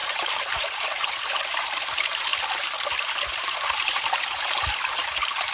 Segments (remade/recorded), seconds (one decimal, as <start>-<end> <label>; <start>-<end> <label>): 0.0-2.3 remade; 2.3-3.3 recorded; 3.3-5.5 remade